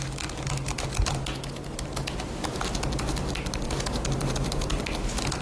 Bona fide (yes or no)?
yes